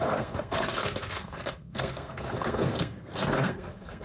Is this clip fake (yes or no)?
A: yes